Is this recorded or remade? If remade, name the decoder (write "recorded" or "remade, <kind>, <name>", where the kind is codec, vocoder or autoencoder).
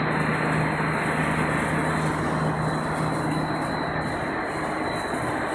recorded